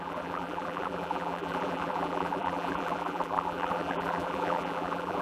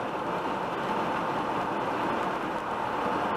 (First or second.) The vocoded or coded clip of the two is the first